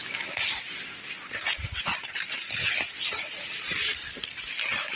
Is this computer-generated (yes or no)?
no